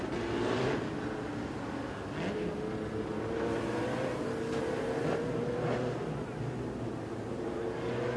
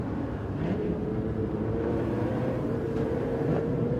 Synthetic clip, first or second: second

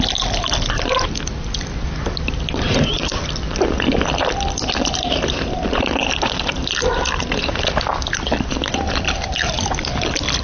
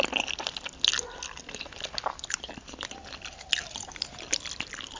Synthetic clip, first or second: first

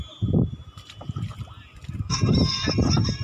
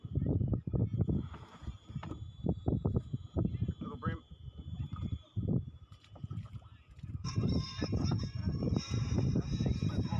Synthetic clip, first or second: second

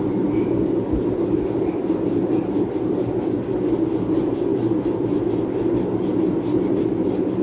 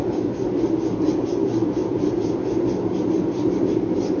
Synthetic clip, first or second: second